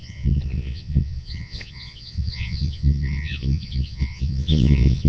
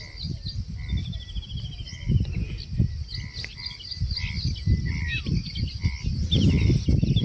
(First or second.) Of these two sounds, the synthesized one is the first